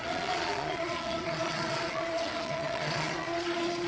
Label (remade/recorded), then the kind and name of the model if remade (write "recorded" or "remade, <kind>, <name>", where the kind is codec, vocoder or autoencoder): remade, vocoder, Vocos